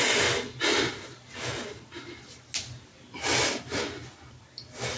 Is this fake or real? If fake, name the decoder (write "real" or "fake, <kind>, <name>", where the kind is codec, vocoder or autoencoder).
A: real